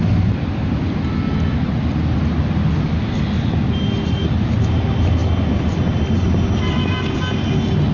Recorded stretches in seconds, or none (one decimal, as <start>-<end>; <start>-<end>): 0.0-7.9